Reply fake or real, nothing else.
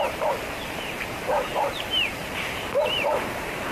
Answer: fake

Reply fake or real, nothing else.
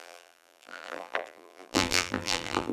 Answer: fake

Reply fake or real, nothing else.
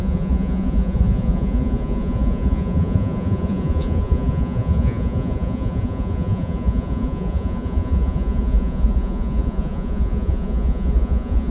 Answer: fake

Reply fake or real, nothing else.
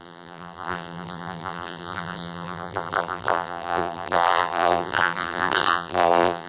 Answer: fake